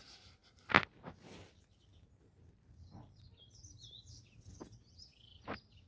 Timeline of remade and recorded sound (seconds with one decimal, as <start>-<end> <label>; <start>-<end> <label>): 0.0-0.4 recorded; 0.4-3.9 remade; 3.9-5.9 recorded